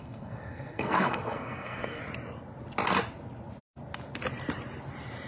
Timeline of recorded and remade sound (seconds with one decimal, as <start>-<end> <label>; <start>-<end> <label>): 0.0-2.0 remade; 2.0-5.3 recorded